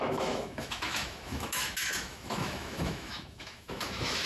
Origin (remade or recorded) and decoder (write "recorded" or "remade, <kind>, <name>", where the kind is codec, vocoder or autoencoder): remade, autoencoder, DAC-VAE